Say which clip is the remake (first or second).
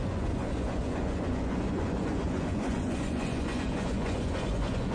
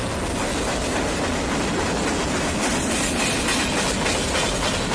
first